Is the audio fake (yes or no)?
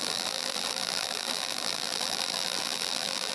yes